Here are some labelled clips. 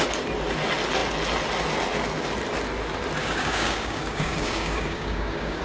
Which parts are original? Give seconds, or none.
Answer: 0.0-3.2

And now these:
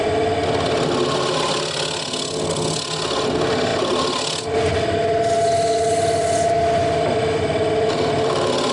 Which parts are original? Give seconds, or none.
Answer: 0.0-8.7

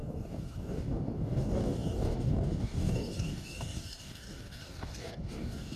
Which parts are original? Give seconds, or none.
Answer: none

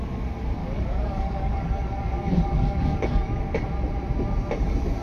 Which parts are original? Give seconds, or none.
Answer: 0.0-0.6; 3.6-5.0